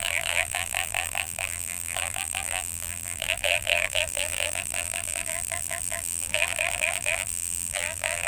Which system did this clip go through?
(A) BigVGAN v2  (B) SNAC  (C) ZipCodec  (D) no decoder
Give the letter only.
A